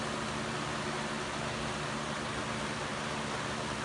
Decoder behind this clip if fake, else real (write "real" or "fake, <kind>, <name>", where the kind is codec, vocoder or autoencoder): real